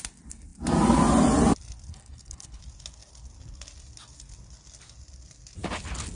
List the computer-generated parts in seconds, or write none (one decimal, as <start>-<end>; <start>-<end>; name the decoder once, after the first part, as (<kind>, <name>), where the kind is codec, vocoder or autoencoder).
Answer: 1.9-2.6 (codec, HILCodec)